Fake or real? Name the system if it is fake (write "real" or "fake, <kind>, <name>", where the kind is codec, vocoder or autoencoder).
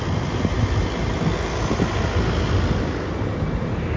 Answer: real